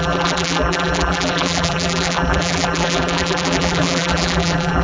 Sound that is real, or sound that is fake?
fake